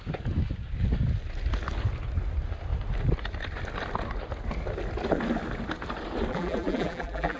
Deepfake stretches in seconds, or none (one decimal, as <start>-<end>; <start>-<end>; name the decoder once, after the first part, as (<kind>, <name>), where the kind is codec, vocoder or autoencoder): 6.3-7.4 (vocoder, BigVGAN v2)